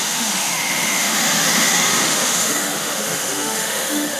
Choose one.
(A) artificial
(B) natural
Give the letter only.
A